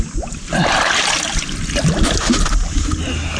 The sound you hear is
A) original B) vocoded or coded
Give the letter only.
A